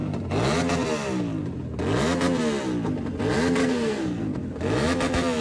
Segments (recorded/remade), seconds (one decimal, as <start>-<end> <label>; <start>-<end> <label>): 0.0-3.6 recorded; 3.6-4.4 remade; 4.4-5.4 recorded